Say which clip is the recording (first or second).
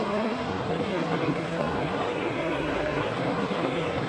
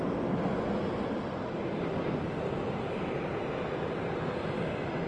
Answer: second